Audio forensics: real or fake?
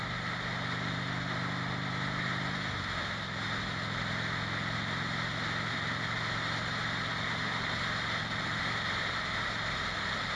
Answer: real